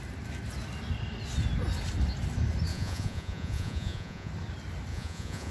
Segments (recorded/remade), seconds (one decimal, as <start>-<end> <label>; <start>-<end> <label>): 0.0-2.7 recorded; 2.7-4.3 remade; 4.3-4.9 recorded; 4.9-5.5 remade